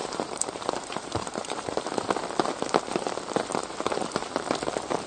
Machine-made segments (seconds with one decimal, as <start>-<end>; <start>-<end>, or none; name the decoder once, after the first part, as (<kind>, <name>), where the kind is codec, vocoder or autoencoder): 0.0-1.8 (vocoder, BigVGAN v2); 3.5-4.3